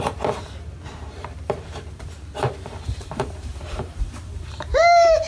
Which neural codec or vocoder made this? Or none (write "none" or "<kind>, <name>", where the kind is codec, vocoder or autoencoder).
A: vocoder, BigVGAN v2